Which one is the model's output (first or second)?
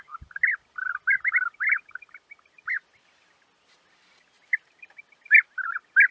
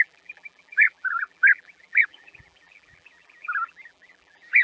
second